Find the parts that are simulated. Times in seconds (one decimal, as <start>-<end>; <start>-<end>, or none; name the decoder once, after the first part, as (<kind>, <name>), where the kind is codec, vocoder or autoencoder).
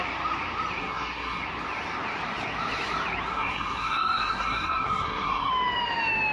0.8-1.4 (codec, SNAC); 3.3-5.5